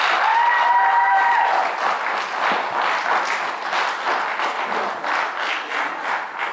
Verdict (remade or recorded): recorded